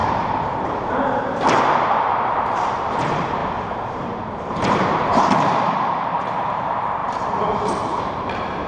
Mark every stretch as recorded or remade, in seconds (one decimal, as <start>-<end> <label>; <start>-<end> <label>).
0.0-8.7 remade